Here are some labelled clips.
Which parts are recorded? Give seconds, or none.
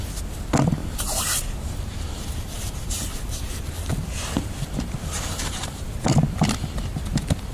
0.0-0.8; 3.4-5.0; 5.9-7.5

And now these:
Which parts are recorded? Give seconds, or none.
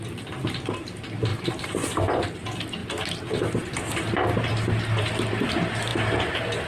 0.0-1.3; 2.4-6.7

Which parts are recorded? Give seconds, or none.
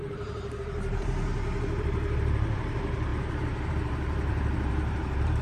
1.3-1.8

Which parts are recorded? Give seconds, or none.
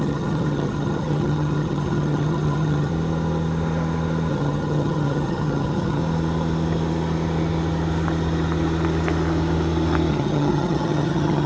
2.9-4.3; 6.0-10.1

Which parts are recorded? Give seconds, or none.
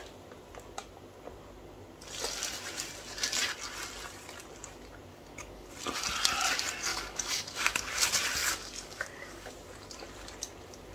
0.0-5.1; 5.7-6.9; 8.0-8.4; 9.5-10.9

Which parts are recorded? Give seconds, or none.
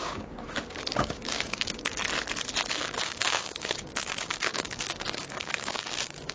2.0-2.7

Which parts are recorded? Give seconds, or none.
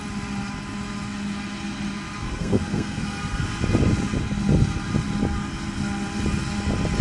0.0-2.2; 3.4-7.0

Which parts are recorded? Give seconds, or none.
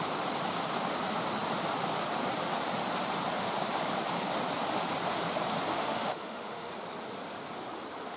0.0-5.7; 6.7-8.2